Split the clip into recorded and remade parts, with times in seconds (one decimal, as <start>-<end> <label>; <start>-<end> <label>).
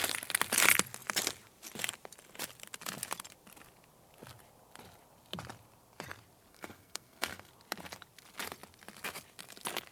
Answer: 0.0-6.5 recorded; 6.5-7.5 remade; 7.5-9.9 recorded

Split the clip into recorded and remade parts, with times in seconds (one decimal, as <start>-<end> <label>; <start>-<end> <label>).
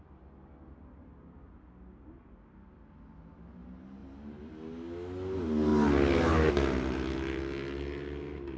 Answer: 0.0-4.0 recorded; 4.0-4.5 remade; 4.5-8.6 recorded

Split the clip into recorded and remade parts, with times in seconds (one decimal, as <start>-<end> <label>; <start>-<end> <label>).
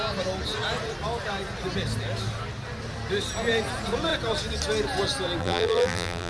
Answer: 0.0-5.4 recorded; 5.4-6.3 remade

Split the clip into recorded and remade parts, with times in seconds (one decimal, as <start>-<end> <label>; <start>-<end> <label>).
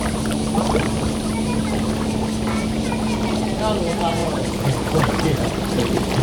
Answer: 0.0-4.2 recorded; 4.2-5.5 remade; 5.5-6.2 recorded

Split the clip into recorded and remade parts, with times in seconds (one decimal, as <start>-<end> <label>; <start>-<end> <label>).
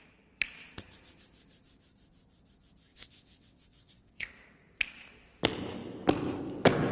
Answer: 0.0-2.9 recorded; 2.9-4.3 remade; 4.3-6.9 recorded